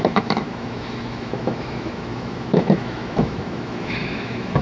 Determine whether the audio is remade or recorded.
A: remade